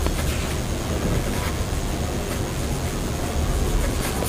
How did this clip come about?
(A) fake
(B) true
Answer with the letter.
B